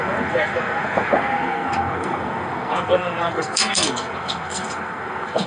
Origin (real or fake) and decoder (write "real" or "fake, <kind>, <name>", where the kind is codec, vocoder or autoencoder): fake, codec, SNAC